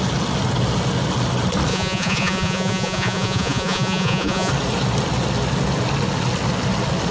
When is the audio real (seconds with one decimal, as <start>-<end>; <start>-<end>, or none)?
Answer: 0.0-1.7; 4.5-7.1